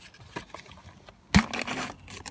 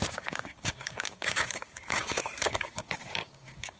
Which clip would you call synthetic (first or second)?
second